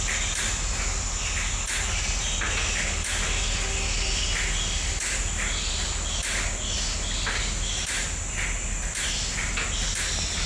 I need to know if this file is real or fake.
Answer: real